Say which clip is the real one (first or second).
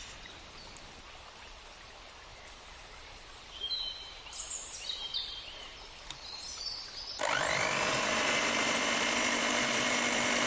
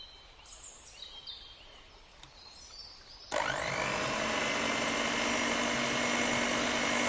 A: second